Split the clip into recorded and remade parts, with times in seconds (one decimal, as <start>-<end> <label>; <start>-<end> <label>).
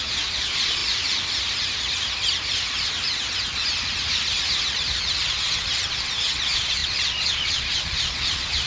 0.0-0.8 remade; 0.8-5.3 recorded; 5.3-8.7 remade